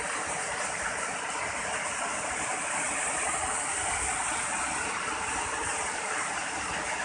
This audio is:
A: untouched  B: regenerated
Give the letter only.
A